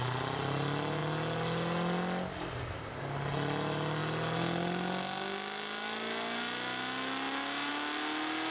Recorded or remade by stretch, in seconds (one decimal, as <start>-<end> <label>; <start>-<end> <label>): 0.0-8.5 recorded